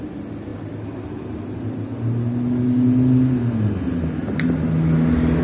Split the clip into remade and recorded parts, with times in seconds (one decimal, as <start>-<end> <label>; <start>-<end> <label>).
0.0-5.4 recorded